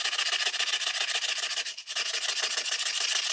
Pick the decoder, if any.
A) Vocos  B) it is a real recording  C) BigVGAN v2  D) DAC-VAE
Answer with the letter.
B